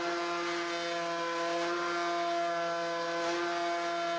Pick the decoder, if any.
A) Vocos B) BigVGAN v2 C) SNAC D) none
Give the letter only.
D